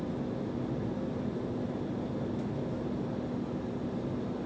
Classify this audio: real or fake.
real